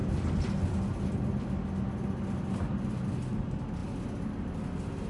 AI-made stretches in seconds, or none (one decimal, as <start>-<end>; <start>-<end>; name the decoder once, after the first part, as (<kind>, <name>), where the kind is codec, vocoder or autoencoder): none